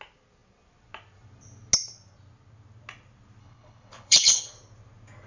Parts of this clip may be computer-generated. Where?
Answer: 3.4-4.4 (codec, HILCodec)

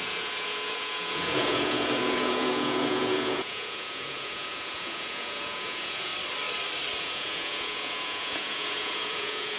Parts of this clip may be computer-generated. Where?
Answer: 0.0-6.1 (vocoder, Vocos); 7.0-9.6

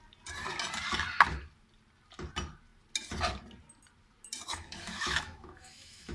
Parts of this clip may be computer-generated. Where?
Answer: 4.5-6.1 (autoencoder, DAC-VAE)

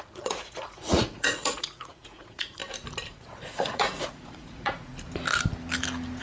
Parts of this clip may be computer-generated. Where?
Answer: 0.0-2.6 (vocoder, Vocos); 3.1-4.9

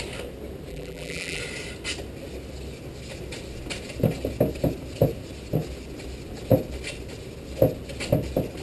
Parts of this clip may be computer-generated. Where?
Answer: 0.7-1.4 (vocoder, BigVGAN v2)